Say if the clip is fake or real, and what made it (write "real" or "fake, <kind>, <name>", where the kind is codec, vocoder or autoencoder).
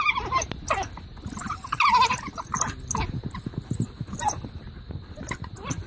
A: real